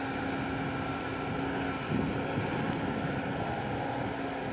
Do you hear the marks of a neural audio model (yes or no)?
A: no